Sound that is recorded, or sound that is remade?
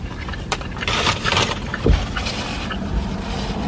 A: remade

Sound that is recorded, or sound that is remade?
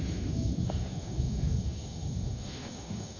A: remade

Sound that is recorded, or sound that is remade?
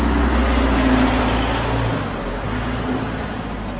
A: recorded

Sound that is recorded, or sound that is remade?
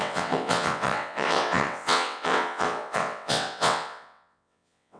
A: remade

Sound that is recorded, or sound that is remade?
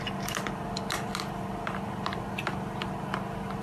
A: recorded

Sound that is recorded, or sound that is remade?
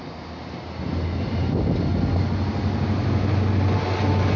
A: recorded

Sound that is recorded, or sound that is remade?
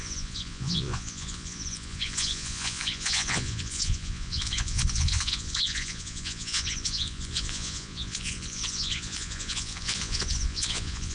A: remade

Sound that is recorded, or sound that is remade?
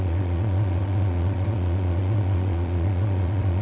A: remade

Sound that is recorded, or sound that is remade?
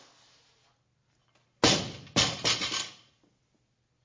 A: recorded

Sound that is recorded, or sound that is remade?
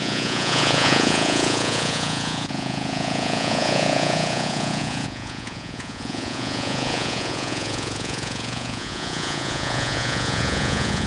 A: remade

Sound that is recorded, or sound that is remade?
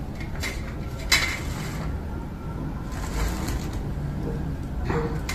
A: recorded